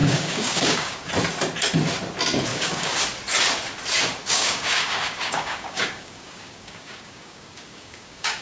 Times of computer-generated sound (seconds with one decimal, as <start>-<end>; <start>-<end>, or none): 0.0-1.1; 2.5-3.0; 4.2-8.4